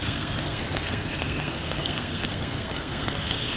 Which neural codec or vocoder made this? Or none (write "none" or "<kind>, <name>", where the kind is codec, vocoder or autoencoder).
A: codec, SNAC